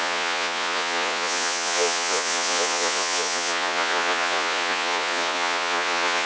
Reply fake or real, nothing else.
fake